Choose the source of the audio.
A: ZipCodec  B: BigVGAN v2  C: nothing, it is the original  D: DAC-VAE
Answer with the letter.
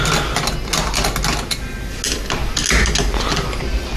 C